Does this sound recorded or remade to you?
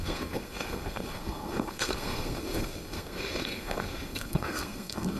remade